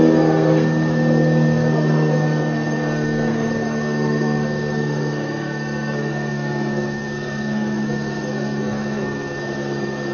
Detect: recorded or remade remade